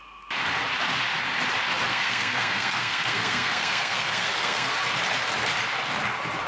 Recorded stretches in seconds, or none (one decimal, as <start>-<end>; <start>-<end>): 0.0-1.9; 4.7-6.5